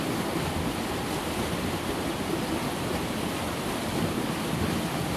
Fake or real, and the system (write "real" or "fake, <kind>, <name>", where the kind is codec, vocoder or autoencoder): real